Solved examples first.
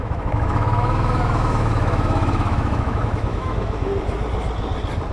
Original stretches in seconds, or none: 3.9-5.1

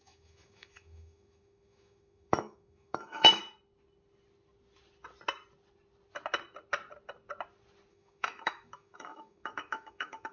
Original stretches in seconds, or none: 3.4-7.9

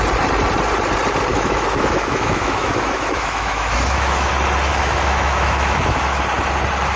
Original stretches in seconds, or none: 0.0-1.3; 4.3-4.7; 6.2-7.0

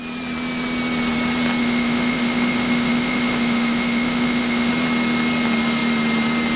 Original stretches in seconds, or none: 0.0-1.6; 4.7-6.6

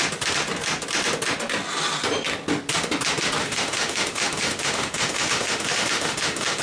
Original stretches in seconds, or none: 0.0-3.4

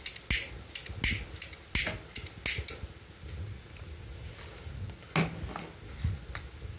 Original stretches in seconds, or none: 0.0-6.8

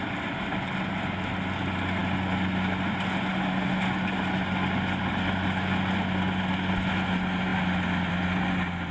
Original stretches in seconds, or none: 0.0-8.9

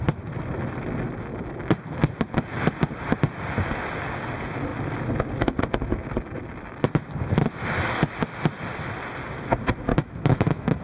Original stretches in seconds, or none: 0.0-9.9